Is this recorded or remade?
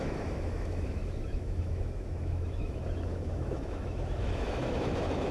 remade